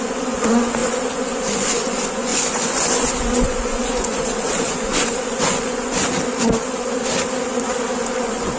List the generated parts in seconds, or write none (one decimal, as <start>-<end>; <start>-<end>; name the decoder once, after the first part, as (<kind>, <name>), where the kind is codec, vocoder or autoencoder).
0.0-6.0 (vocoder, Vocos); 8.0-8.6